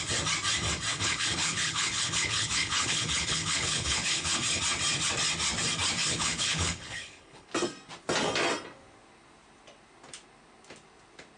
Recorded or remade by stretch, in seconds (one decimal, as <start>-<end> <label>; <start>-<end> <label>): 0.0-0.9 recorded; 0.9-4.6 remade; 4.6-6.0 recorded; 6.0-7.5 remade; 7.5-11.4 recorded